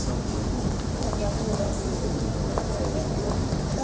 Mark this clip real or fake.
real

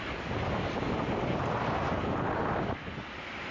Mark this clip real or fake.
real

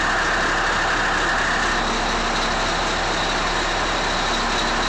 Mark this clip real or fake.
real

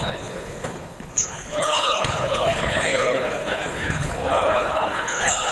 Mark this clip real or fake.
fake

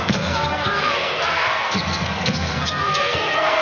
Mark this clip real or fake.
fake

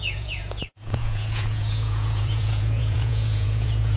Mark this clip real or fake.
fake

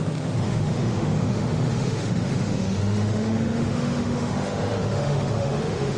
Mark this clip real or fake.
fake